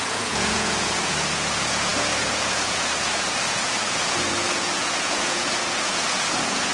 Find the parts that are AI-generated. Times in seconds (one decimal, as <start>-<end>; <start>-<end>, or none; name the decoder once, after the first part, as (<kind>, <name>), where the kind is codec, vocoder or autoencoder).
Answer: 0.0-6.7 (vocoder, Vocos)